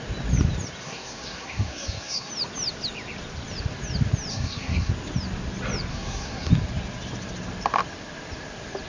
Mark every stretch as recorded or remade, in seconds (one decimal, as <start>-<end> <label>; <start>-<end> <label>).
0.0-0.8 recorded; 0.8-2.3 remade; 2.3-4.3 recorded; 4.3-4.9 remade; 4.9-5.9 recorded; 5.9-6.5 remade; 6.5-8.9 recorded